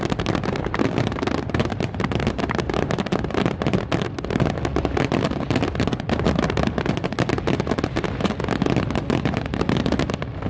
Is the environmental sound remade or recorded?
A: recorded